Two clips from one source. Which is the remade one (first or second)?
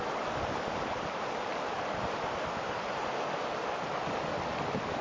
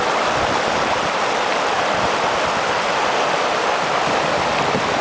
second